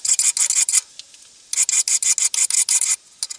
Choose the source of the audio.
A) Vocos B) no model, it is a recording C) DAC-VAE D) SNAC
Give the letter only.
B